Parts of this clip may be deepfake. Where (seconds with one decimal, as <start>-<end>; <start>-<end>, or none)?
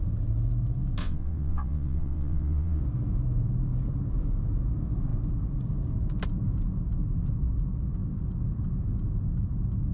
1.0-2.8